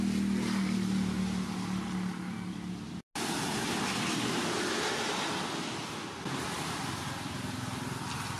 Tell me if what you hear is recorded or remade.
recorded